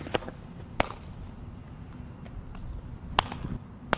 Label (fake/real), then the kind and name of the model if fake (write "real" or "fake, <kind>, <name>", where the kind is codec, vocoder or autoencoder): real